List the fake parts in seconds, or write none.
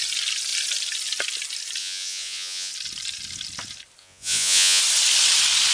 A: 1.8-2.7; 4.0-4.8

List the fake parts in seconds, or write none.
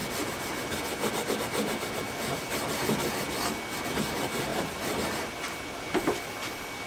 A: none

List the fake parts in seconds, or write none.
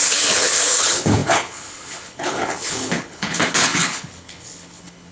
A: 0.0-5.1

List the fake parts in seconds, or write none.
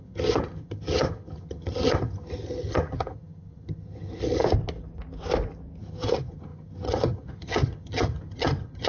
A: 0.0-4.4; 5.8-8.9